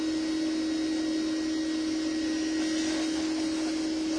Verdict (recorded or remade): recorded